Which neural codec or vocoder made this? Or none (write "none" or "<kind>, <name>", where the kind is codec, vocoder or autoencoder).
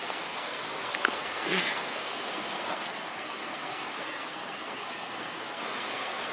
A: codec, SNAC